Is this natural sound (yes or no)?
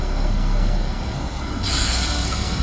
no